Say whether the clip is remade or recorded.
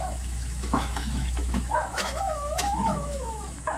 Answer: remade